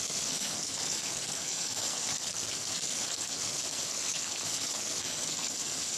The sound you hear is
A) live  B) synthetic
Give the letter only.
B